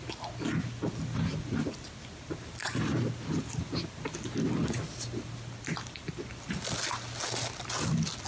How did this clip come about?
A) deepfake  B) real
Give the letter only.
B